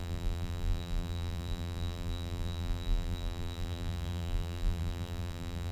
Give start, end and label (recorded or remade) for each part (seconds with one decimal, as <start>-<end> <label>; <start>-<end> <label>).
0.0-5.7 remade